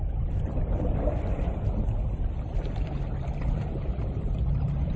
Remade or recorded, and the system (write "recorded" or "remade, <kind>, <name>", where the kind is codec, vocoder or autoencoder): remade, vocoder, BigVGAN v2